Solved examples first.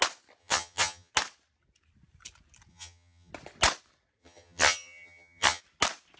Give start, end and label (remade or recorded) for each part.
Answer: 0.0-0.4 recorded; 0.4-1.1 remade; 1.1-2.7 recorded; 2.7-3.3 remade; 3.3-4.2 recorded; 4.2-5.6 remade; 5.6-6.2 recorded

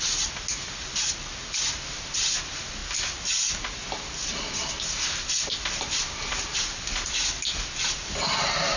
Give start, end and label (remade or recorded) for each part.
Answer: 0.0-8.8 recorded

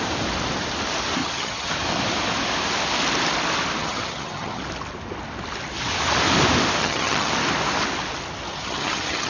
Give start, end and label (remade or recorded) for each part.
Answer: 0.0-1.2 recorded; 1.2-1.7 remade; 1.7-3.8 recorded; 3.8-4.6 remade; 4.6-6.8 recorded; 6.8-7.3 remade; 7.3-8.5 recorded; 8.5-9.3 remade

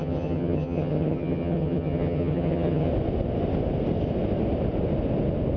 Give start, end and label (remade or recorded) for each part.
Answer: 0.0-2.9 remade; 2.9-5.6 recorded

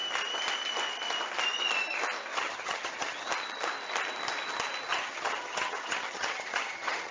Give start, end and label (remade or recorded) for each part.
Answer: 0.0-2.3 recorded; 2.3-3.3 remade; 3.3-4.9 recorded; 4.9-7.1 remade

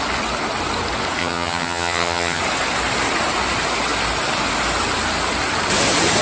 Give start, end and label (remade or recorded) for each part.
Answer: 0.0-1.2 recorded; 1.2-2.4 remade; 2.4-6.2 recorded